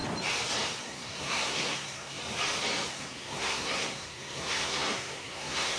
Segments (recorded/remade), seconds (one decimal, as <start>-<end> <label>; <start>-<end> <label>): 0.0-0.8 recorded; 0.8-2.2 remade; 2.2-2.9 recorded; 2.9-5.8 remade